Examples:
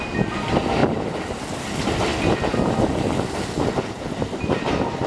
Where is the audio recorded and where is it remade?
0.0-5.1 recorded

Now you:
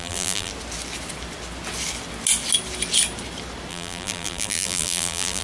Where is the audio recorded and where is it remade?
0.0-0.5 remade; 0.5-3.7 recorded; 3.7-5.4 remade

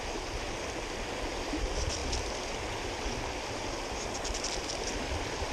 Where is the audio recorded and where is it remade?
0.0-1.3 recorded; 1.3-5.5 remade

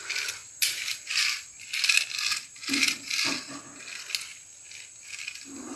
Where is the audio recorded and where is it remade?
0.0-0.4 recorded; 0.4-3.3 remade; 3.3-5.8 recorded